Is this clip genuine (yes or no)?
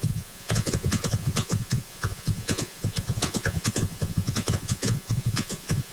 no